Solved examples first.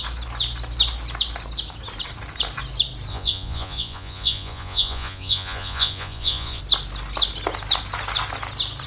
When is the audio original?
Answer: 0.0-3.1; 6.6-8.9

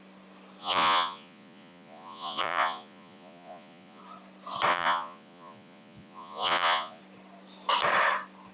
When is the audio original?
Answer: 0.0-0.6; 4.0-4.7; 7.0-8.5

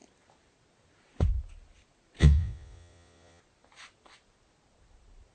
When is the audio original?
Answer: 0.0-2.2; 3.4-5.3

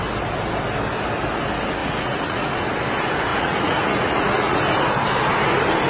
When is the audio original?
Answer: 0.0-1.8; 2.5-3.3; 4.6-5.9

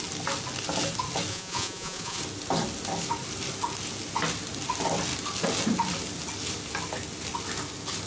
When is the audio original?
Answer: 0.0-1.3; 2.2-8.1